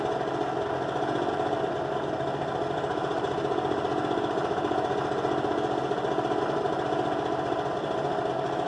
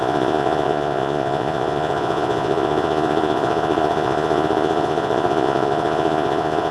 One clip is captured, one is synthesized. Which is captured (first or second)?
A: first